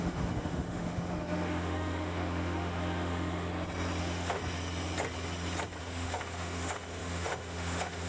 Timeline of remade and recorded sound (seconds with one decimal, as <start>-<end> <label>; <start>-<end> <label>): 0.0-3.5 remade; 3.5-4.0 recorded; 4.0-4.4 remade; 4.4-5.8 recorded; 5.8-8.1 remade